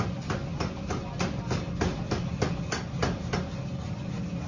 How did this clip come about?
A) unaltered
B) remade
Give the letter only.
A